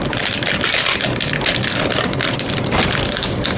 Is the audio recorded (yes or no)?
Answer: yes